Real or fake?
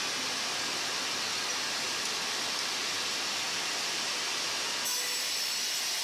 real